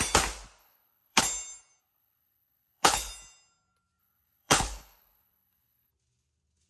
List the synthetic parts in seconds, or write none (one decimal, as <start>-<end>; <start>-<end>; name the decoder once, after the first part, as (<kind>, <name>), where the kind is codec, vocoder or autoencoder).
0.6-1.2 (codec, HILCodec); 1.8-3.1; 4.0-5.9